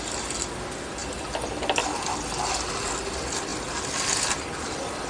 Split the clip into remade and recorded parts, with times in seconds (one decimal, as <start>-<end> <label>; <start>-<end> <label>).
0.0-1.0 recorded; 1.0-2.8 remade; 2.8-3.5 recorded; 3.5-5.1 remade